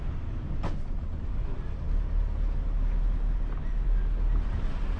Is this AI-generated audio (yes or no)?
no